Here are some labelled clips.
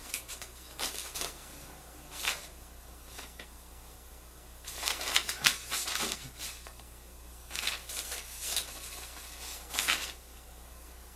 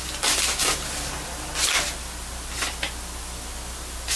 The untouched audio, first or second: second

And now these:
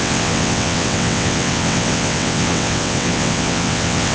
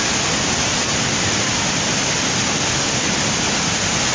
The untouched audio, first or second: second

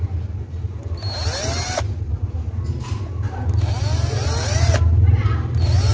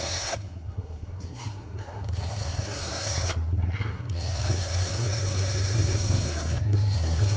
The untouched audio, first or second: first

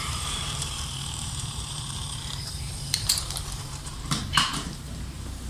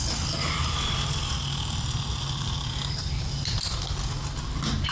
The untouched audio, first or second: second